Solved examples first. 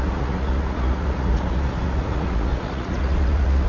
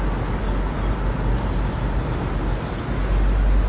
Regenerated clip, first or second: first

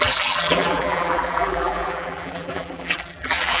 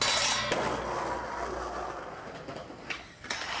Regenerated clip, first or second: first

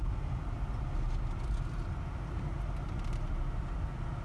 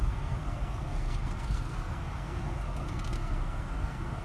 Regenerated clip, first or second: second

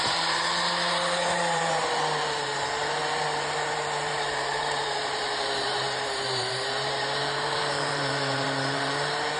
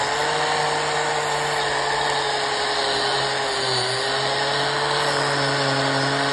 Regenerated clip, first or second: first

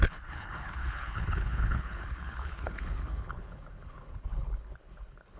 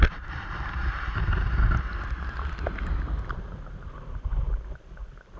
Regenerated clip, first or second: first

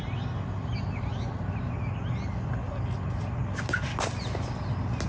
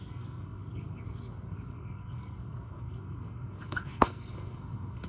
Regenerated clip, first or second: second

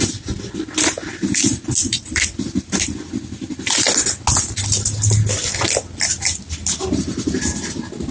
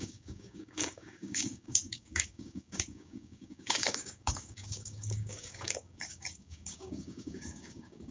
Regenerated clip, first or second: second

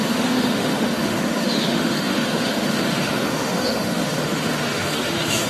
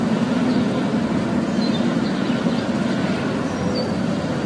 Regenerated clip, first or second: first